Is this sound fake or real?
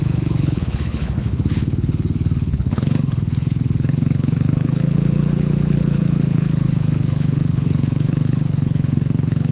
fake